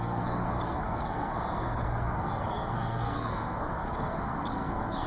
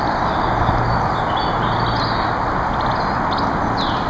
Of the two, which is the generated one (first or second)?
first